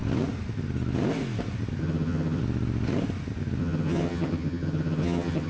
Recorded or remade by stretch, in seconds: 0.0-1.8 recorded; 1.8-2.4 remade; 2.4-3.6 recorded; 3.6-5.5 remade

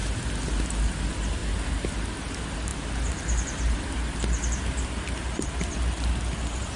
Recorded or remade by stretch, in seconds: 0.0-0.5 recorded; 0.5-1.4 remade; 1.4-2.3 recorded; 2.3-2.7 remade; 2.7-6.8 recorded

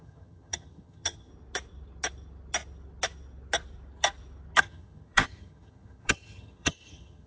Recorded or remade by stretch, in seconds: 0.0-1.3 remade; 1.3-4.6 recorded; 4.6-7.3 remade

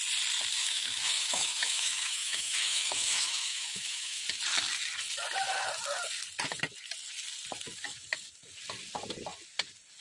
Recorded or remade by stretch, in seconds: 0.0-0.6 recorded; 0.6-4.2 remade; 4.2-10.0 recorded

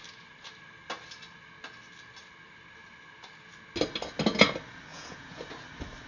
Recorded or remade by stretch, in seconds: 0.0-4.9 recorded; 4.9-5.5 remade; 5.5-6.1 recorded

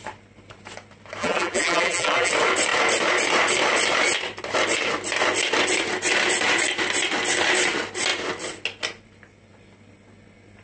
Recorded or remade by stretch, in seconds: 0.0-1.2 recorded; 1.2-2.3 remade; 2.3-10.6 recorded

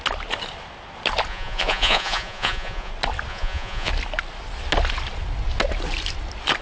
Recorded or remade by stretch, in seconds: 0.0-1.3 recorded; 1.3-2.9 remade; 2.9-3.3 recorded; 3.3-3.9 remade; 3.9-6.6 recorded

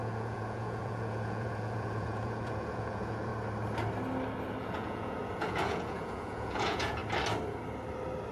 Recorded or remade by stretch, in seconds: 0.0-3.3 remade; 3.3-4.6 recorded; 4.6-7.0 remade; 7.0-8.3 recorded